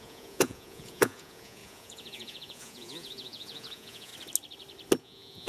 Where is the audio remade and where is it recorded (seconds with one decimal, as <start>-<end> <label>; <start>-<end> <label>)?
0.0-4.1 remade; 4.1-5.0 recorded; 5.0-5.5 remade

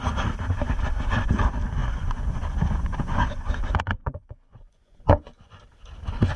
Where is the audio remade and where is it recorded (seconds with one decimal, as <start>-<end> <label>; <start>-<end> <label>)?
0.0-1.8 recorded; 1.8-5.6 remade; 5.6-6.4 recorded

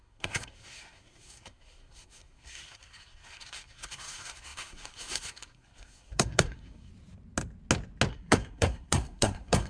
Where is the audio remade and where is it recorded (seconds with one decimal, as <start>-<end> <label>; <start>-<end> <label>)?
0.0-6.9 remade; 6.9-8.1 recorded; 8.1-9.7 remade

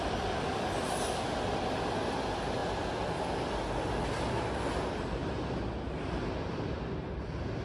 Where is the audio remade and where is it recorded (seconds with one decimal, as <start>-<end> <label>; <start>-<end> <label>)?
0.0-7.6 recorded